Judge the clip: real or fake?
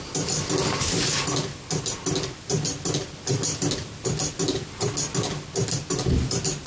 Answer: real